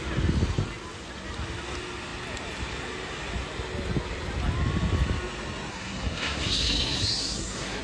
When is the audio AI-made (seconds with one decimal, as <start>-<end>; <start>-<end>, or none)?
5.7-7.8